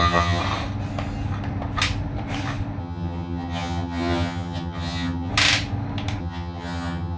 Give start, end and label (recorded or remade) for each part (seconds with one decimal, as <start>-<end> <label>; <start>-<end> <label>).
0.0-0.4 remade; 0.4-2.8 recorded; 2.8-5.3 remade; 5.3-6.2 recorded; 6.2-7.2 remade